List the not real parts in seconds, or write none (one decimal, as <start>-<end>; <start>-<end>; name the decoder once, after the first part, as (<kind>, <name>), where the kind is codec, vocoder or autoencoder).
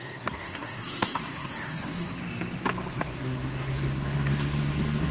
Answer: 0.0-2.2 (codec, SNAC); 2.9-5.1